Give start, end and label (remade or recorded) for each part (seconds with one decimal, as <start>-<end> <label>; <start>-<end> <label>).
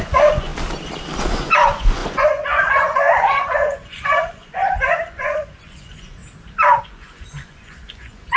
0.0-0.5 remade; 0.5-1.3 recorded; 1.3-6.2 remade; 6.2-6.8 recorded; 6.8-8.4 remade